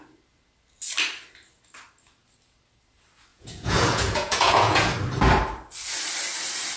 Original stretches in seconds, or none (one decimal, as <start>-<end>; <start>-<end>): 0.0-3.3; 4.9-6.8